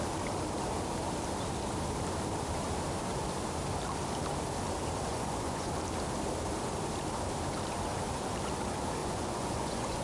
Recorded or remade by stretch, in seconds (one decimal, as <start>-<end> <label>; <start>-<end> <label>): 0.0-5.1 recorded; 5.1-5.7 remade; 5.7-9.0 recorded; 9.0-10.0 remade